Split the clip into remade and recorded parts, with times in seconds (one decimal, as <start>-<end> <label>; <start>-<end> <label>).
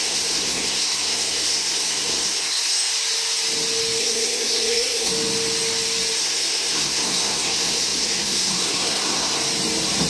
0.0-2.9 remade; 2.9-4.0 recorded; 4.0-5.1 remade; 5.1-6.2 recorded; 6.2-9.4 remade; 9.4-10.1 recorded